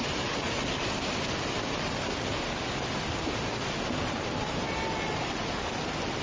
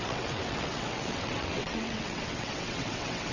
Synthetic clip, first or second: second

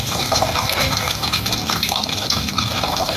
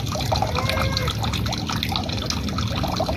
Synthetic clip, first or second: first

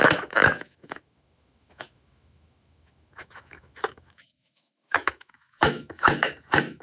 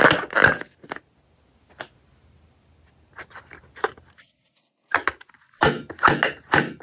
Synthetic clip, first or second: first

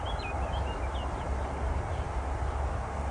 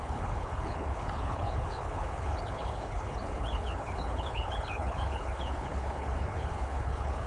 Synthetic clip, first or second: second